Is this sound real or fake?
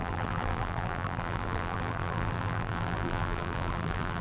fake